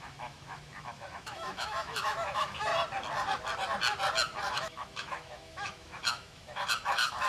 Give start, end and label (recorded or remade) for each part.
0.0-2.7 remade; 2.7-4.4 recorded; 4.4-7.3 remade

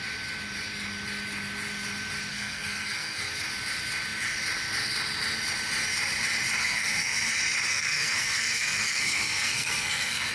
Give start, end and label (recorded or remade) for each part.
0.0-2.3 recorded; 2.3-3.3 remade; 3.3-6.6 recorded; 6.6-7.3 remade; 7.3-7.7 recorded; 7.7-10.3 remade

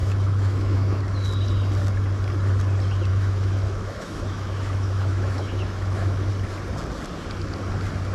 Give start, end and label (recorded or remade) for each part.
0.0-1.0 remade; 1.0-3.1 recorded; 3.1-6.3 remade; 6.3-8.1 recorded

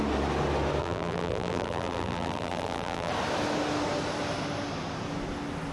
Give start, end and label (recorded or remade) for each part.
0.0-0.8 recorded; 0.8-3.1 remade; 3.1-5.7 recorded

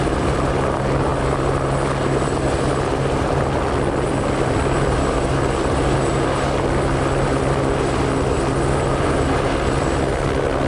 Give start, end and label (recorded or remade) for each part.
0.0-10.7 recorded

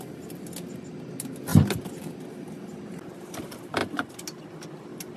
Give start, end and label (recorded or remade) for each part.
0.0-5.2 recorded